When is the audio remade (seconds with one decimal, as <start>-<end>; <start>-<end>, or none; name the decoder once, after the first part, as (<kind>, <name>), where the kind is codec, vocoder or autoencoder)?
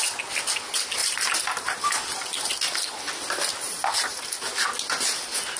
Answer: none